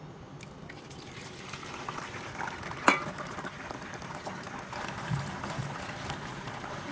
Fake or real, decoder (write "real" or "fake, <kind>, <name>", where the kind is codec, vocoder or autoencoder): real